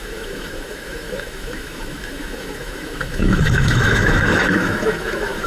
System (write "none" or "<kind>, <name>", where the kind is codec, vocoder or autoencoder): autoencoder, DAC-VAE